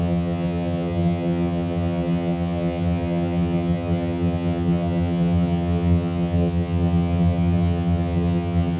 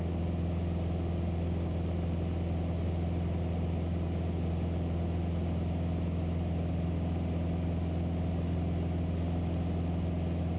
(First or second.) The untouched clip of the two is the second